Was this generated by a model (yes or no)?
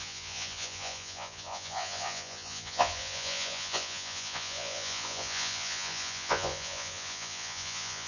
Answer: yes